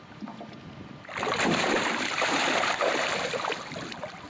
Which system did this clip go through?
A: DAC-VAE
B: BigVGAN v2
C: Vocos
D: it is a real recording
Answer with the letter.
B